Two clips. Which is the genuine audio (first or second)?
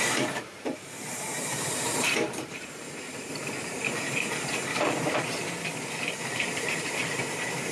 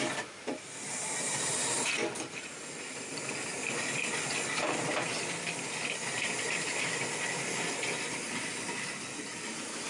second